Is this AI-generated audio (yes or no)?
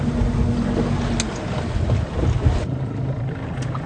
no